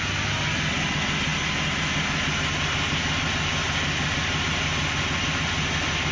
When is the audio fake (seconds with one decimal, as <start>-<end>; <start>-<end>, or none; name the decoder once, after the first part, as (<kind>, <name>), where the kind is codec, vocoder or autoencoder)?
none

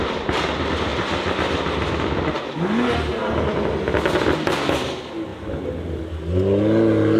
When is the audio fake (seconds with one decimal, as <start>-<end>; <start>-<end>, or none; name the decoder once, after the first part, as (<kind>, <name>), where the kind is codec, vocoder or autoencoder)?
none

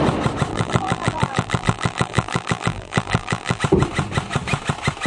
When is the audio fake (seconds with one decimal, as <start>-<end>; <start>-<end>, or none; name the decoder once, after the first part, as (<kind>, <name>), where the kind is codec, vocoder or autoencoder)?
0.5-3.6 (vocoder, BigVGAN v2)

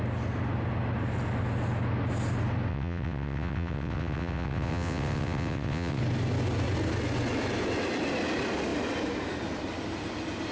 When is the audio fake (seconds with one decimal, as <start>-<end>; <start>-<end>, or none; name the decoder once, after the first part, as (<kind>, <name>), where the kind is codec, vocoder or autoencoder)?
2.7-6.0 (vocoder, WaveNeXt)

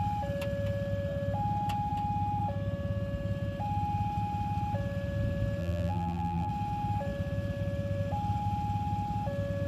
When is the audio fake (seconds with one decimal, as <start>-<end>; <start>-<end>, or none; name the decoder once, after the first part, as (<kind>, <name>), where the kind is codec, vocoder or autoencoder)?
5.6-6.5 (vocoder, BigVGAN v2)

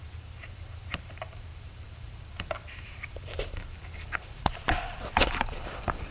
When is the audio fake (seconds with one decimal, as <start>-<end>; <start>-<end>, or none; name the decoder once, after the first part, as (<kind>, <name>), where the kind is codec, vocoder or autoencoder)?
0.0-6.1 (vocoder, BigVGAN v2)

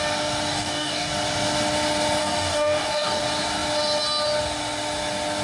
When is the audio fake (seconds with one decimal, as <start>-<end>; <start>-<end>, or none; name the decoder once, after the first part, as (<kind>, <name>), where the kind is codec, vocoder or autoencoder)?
0.5-1.1 (codec, DAC); 2.2-3.2

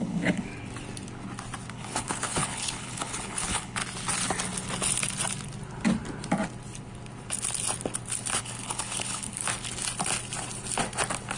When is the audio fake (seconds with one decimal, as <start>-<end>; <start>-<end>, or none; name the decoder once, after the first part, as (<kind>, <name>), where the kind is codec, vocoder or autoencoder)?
0.0-0.5 (codec, HILCodec); 1.7-3.8; 8.4-9.4